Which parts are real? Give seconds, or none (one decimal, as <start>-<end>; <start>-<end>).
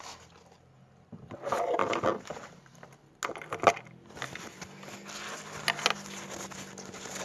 0.0-1.8; 2.9-7.2